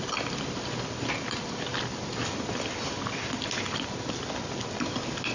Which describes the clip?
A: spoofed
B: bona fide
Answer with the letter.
B